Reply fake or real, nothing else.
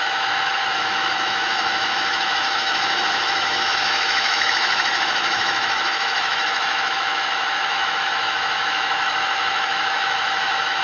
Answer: fake